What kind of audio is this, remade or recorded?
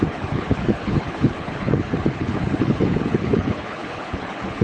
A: remade